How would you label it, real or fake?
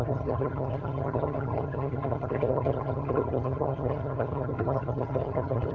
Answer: fake